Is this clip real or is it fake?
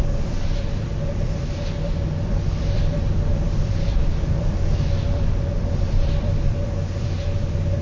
fake